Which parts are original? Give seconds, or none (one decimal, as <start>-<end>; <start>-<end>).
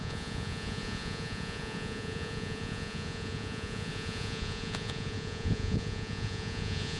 none